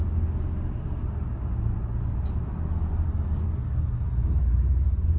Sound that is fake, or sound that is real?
real